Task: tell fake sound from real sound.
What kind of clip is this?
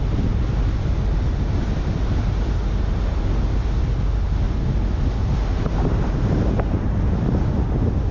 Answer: real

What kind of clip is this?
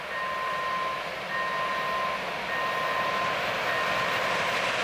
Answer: real